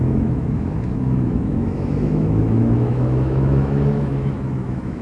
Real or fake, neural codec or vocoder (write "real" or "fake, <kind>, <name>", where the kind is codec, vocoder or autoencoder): fake, autoencoder, DAC-VAE